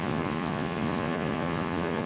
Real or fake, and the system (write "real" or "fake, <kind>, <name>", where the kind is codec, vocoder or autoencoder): fake, vocoder, Vocos